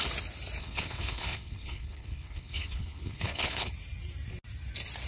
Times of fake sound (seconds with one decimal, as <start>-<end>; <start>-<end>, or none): 0.6-3.7